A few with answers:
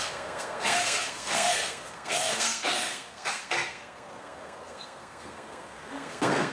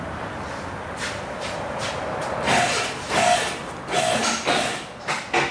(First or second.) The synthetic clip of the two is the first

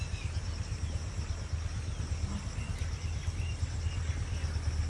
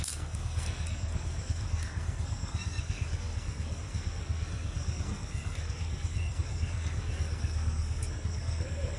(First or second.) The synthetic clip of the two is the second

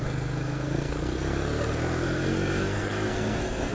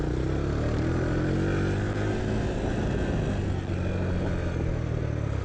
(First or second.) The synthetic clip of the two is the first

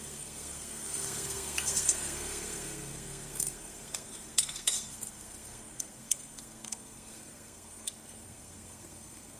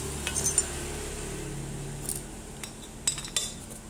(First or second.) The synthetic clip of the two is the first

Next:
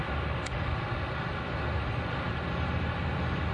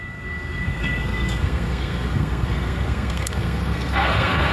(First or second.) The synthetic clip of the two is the second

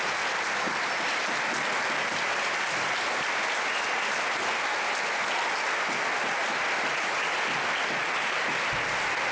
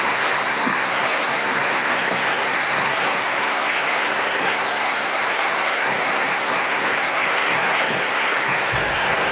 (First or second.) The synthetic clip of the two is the second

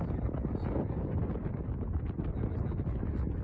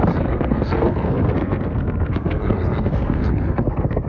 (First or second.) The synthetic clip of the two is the second